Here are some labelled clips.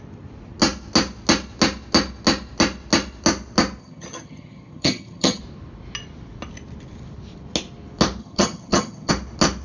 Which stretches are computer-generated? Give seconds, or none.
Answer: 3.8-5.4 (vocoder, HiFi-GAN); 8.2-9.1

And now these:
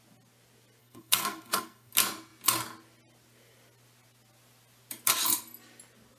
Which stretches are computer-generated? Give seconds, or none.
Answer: 0.8-1.9 (codec, SNAC)

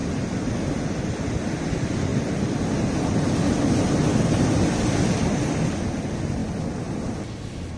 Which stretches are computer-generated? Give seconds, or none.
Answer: none

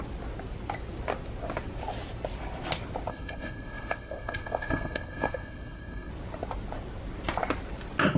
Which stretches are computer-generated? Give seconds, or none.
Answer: 3.1-6.1 (codec, SNAC)

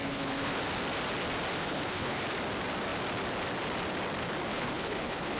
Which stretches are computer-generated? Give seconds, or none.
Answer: 0.0-0.6 (codec, HILCodec); 1.6-2.2; 4.5-5.4